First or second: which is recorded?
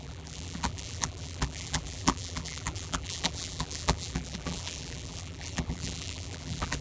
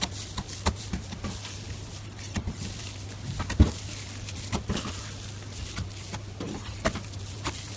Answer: second